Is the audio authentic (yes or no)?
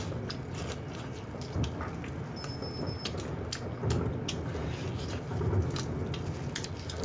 yes